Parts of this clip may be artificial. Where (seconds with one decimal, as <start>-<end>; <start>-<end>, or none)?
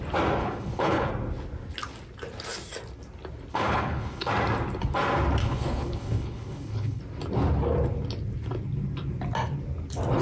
0.4-1.1; 3.5-4.3; 5.4-7.0